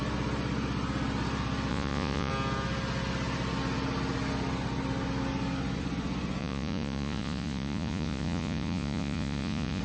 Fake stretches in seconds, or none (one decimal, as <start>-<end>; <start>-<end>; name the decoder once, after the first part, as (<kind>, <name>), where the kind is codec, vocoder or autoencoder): 1.7-2.3 (vocoder, Vocos); 6.4-9.8

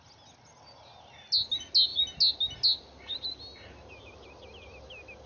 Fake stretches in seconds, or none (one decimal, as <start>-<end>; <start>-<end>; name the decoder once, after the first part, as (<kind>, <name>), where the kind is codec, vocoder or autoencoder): none

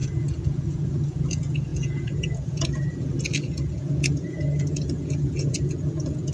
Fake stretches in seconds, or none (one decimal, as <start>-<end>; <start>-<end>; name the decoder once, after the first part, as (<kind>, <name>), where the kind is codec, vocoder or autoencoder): 0.0-6.3 (vocoder, Vocos)

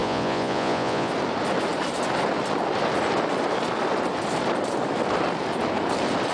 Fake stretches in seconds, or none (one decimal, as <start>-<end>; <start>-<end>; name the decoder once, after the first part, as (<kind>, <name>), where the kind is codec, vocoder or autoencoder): 0.0-1.1 (vocoder, Vocos)

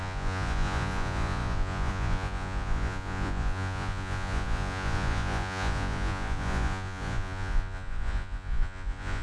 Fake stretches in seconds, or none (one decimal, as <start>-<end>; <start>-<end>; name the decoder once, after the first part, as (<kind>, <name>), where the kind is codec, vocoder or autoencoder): 0.0-9.2 (vocoder, Vocos)